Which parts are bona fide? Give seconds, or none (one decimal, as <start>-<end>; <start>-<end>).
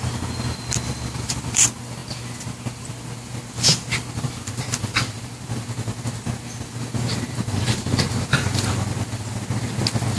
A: 0.0-10.2